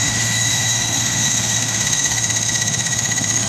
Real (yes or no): no